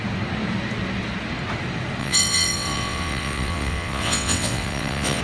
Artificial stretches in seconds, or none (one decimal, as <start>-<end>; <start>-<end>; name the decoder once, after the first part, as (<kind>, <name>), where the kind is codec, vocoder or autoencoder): 2.0-5.2 (vocoder, WaveNeXt)